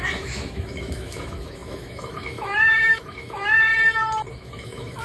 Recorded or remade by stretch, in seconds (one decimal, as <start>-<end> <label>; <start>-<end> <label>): 0.0-3.7 remade; 3.7-4.3 recorded; 4.3-5.0 remade